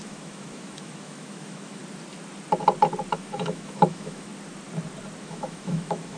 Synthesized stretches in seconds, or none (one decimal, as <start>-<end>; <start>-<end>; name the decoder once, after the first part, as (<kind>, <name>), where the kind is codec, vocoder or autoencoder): 0.0-1.8 (autoencoder, DAC-VAE); 3.1-4.3; 5.2-6.2